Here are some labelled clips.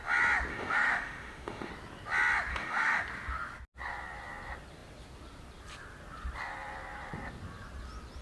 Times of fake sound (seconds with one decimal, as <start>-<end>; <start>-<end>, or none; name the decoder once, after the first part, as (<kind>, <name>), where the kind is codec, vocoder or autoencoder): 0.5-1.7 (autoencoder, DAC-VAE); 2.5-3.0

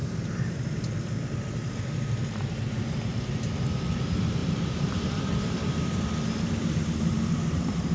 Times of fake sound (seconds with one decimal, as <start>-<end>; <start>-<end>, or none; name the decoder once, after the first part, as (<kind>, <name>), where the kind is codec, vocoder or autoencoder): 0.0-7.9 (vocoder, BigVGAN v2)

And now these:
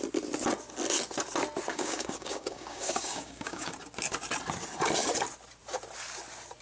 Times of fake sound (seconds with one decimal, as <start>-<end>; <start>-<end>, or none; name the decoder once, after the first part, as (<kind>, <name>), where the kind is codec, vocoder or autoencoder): 1.7-3.7 (codec, DAC)